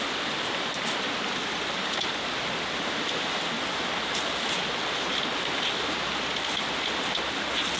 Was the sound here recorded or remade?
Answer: recorded